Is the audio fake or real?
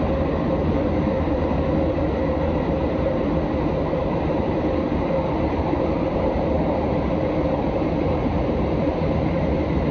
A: fake